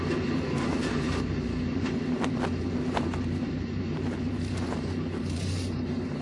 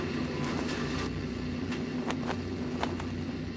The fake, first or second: first